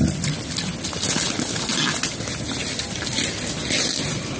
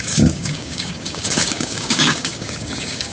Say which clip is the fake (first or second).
second